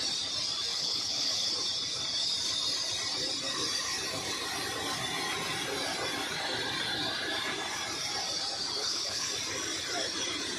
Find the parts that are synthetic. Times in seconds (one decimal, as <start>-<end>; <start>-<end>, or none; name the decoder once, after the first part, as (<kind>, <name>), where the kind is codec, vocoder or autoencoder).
0.7-1.5 (codec, HILCodec); 8.8-9.3